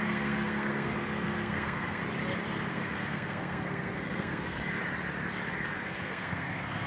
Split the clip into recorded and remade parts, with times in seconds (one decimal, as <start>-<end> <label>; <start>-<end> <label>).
0.0-2.0 remade; 2.0-2.7 recorded; 2.7-4.8 remade; 4.8-5.5 recorded; 5.5-6.9 remade